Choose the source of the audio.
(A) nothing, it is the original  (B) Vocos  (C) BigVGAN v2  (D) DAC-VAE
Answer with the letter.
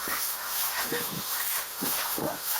D